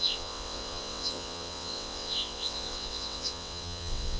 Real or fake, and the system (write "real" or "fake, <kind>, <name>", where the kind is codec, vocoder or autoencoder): fake, vocoder, WaveNeXt